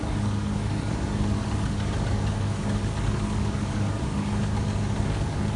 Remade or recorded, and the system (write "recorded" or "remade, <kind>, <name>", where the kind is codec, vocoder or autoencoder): remade, codec, DAC